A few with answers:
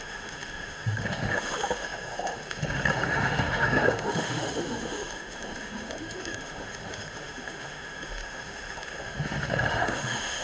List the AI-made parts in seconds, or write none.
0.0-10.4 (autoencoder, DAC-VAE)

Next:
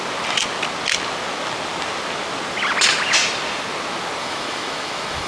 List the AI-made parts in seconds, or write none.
4.2-5.3 (autoencoder, DAC-VAE)

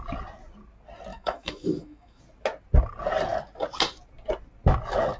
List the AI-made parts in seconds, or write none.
1.1-2.2 (autoencoder, DAC-VAE)

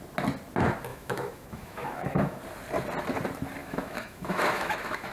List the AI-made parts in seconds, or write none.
0.9-2.4 (autoencoder, DAC-VAE); 3.6-5.1

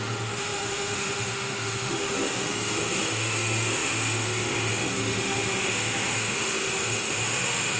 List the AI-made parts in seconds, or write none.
0.0-7.8 (autoencoder, DAC-VAE)

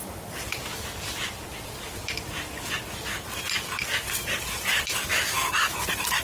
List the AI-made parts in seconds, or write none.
5.1-5.7 (autoencoder, DAC-VAE)

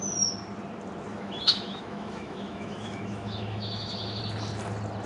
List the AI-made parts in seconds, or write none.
1.1-4.2 (autoencoder, DAC-VAE)

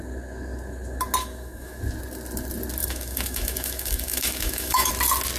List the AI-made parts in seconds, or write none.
1.2-1.8 (autoencoder, DAC-VAE); 2.8-4.9